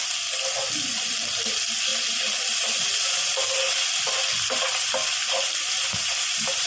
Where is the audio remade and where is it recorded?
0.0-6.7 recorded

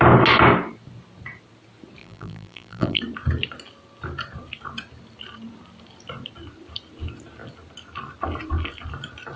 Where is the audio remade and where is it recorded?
0.0-2.0 recorded; 2.0-3.0 remade; 3.0-9.4 recorded

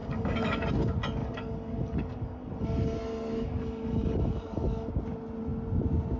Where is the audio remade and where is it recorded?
0.0-0.7 remade; 0.7-1.2 recorded; 1.2-4.9 remade; 4.9-6.2 recorded

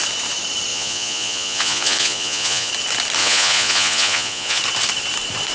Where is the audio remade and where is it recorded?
0.0-0.7 recorded; 0.7-2.7 remade; 2.7-3.2 recorded; 3.2-4.6 remade; 4.6-5.5 recorded

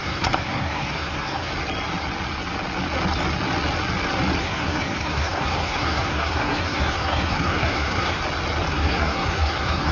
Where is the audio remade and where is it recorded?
0.0-1.5 remade; 1.5-4.4 recorded; 4.4-8.2 remade; 8.2-8.7 recorded; 8.7-9.9 remade

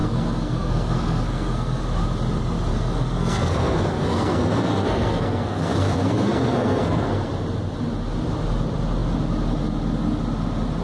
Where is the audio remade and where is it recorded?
0.0-1.8 remade; 1.8-2.7 recorded; 2.7-7.3 remade; 7.3-10.8 recorded